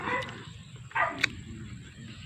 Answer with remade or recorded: recorded